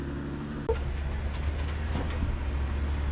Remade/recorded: recorded